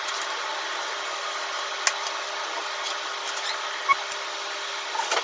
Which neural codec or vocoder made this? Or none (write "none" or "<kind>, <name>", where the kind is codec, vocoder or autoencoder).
none